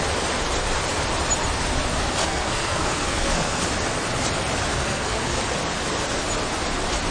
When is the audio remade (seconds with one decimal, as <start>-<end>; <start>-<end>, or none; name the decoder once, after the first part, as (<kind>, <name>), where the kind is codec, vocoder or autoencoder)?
2.2-3.6 (codec, SNAC); 4.7-5.4